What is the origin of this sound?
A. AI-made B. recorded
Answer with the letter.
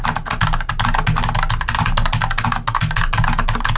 B